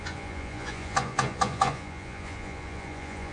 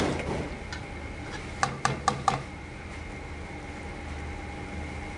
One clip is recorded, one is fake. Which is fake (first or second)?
first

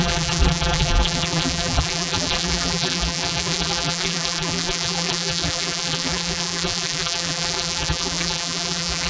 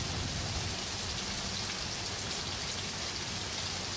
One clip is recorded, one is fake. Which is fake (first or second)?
first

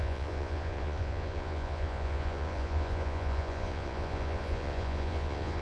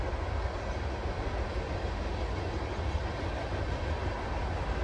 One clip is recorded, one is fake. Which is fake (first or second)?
first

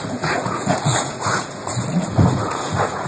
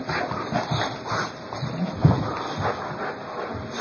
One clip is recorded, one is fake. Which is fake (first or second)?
first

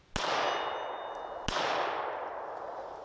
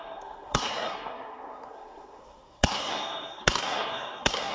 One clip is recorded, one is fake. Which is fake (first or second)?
second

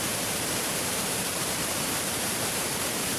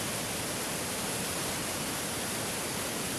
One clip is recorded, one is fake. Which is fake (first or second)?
first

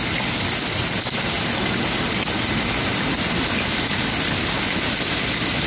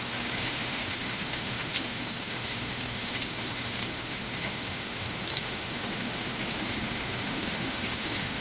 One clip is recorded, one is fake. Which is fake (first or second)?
second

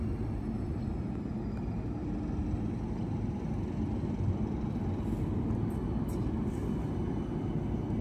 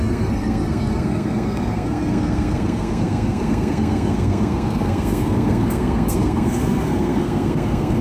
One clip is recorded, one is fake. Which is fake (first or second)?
second